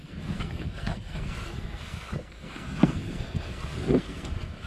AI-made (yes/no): yes